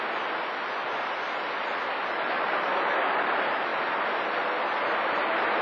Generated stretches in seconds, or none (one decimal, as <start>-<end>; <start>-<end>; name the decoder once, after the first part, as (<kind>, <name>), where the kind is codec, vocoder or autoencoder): 3.7-4.4 (vocoder, BigVGAN v2)

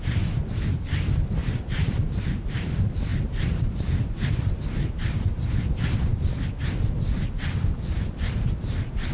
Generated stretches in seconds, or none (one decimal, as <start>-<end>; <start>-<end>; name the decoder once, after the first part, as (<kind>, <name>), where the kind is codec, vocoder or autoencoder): 1.4-2.7 (vocoder, BigVGAN v2)